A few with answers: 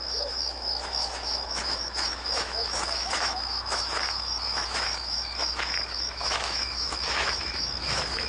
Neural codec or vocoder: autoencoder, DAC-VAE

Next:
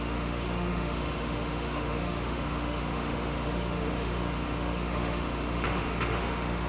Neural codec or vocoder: autoencoder, DAC-VAE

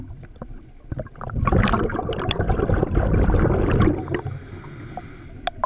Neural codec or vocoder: none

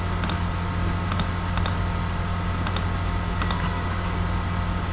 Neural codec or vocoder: none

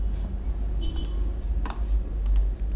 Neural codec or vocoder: vocoder, BigVGAN v2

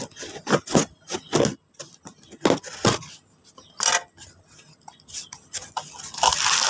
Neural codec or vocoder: none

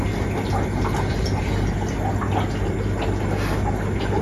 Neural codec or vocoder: none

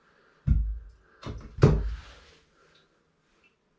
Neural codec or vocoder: none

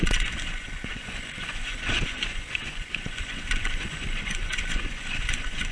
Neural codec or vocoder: vocoder, Vocos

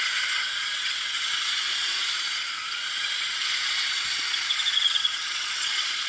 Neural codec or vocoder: vocoder, Vocos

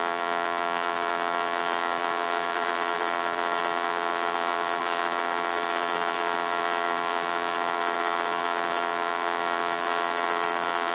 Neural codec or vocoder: vocoder, BigVGAN v2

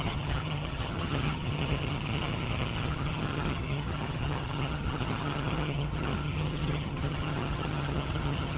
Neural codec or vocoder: vocoder, HiFi-GAN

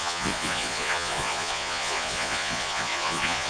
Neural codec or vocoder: vocoder, Vocos